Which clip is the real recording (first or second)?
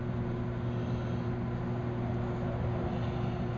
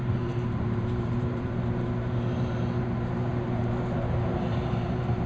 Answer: first